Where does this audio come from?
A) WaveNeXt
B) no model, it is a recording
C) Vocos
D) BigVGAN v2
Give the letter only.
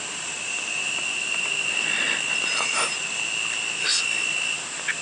B